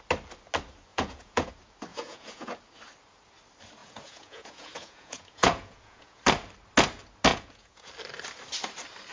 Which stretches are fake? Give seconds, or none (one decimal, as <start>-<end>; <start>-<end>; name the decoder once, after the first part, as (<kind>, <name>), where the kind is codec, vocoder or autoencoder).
0.9-1.5 (vocoder, Vocos); 1.9-2.5; 3.8-6.2; 7.3-7.9